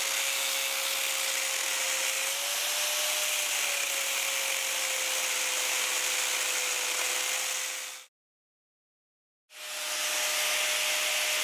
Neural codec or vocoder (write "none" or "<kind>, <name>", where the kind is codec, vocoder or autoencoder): none